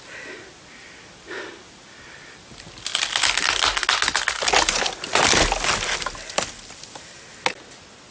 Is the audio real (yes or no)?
yes